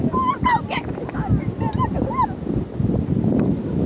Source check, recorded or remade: recorded